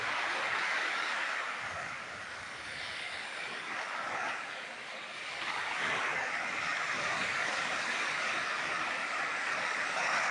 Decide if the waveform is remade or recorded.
remade